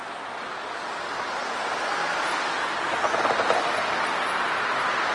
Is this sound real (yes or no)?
yes